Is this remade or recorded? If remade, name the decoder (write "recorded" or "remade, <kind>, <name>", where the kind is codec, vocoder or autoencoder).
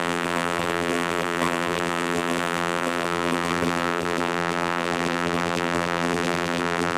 remade, vocoder, BigVGAN v2